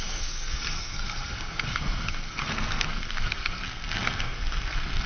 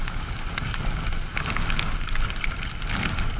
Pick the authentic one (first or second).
second